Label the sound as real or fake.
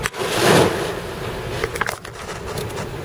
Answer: real